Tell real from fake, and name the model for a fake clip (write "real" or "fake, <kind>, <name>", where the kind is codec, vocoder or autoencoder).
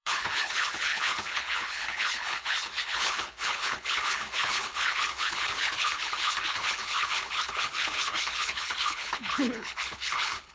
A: fake, codec, HILCodec